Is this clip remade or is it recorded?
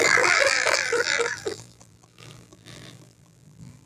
remade